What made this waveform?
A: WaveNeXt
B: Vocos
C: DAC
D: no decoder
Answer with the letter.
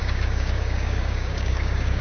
C